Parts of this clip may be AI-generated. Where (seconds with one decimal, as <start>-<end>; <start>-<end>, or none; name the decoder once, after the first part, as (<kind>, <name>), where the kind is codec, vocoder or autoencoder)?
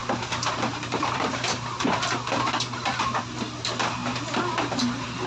0.0-4.0 (vocoder, BigVGAN v2)